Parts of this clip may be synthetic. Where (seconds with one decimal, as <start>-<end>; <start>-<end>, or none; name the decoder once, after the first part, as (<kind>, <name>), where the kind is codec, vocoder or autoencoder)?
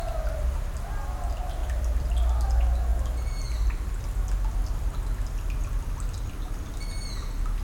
1.6-2.1 (vocoder, BigVGAN v2)